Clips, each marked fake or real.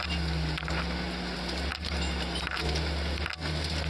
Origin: real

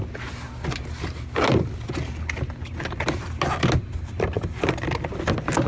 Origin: real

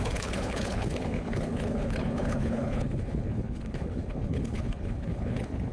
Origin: fake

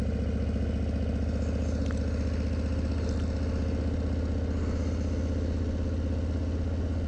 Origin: real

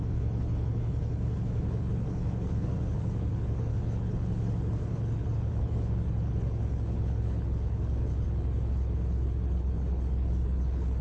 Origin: fake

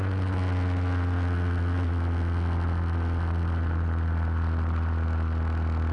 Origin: real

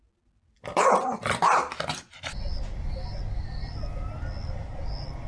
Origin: real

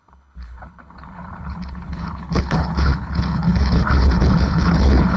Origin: fake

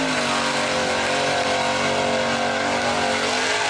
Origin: real